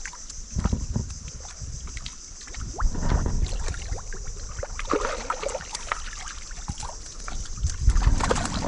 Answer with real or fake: real